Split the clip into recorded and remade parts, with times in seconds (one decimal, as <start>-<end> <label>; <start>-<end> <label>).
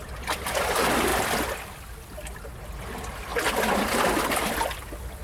0.0-5.2 recorded